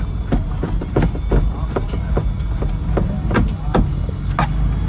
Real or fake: real